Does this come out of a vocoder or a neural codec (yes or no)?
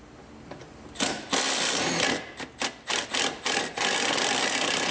no